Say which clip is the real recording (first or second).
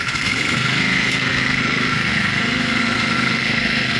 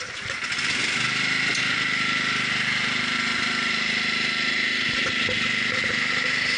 second